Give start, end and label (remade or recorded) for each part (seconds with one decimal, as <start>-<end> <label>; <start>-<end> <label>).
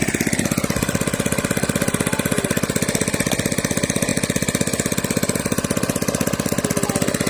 0.0-7.3 recorded